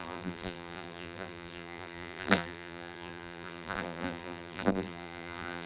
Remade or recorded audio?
remade